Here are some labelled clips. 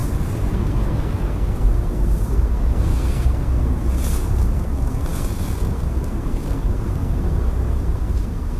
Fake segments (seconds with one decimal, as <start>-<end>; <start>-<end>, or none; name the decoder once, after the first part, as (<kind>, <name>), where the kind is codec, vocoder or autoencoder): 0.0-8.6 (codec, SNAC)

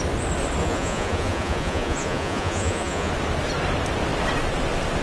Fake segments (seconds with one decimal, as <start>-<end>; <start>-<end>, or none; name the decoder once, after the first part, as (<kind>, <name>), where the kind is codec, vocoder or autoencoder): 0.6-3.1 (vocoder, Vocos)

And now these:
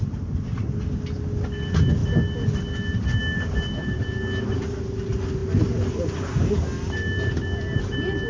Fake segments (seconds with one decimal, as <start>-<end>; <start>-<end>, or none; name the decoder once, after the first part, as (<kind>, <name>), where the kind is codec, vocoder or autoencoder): none

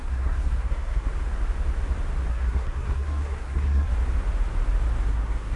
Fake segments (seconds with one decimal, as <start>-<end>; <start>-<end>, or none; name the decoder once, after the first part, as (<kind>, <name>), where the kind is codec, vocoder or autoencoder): 0.0-1.1 (codec, SNAC); 2.3-3.9; 5.1-5.6

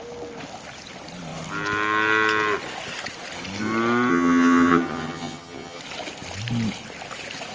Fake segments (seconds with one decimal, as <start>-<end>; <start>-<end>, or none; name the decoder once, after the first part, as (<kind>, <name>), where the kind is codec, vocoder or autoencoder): 4.1-5.8 (vocoder, HiFi-GAN)